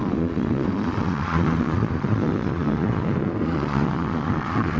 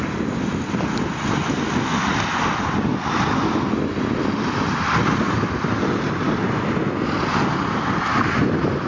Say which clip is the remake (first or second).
first